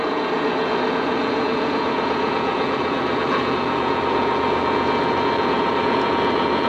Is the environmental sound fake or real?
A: fake